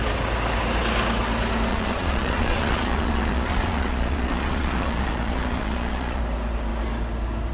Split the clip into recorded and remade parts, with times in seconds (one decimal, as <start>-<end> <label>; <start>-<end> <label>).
0.0-1.7 recorded; 1.7-6.2 remade; 6.2-7.5 recorded